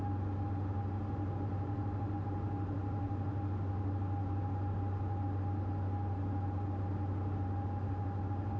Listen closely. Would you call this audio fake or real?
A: real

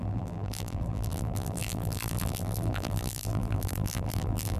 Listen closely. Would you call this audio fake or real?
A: fake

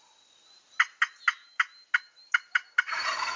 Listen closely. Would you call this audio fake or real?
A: real